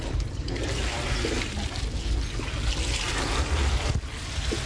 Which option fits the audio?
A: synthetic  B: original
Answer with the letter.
B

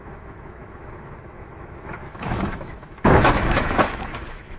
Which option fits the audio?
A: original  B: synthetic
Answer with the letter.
B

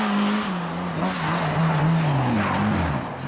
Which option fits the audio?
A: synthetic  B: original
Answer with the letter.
B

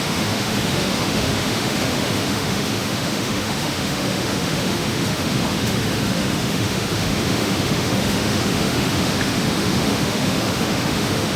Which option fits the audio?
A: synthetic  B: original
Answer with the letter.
A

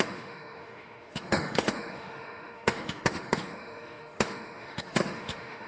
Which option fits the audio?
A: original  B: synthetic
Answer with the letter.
B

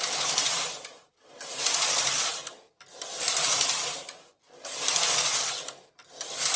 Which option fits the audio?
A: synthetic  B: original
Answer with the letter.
B